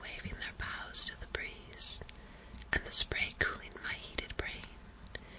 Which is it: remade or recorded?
recorded